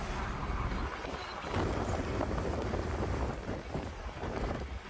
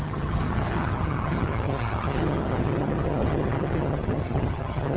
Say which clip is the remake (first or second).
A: second